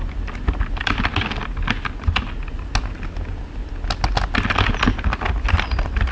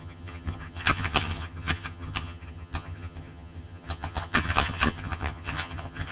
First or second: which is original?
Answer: first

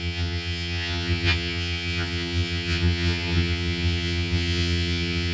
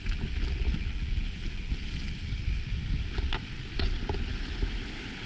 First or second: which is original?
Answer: second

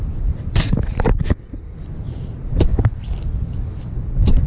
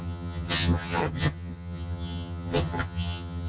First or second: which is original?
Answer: first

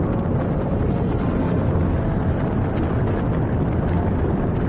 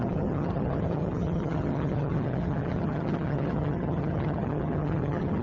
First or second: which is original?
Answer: first